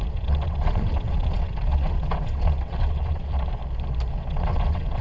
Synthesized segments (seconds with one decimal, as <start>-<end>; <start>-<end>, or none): 0.0-3.6; 4.1-5.0